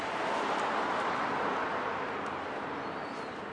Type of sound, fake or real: real